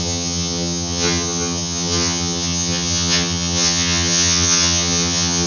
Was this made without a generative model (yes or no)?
no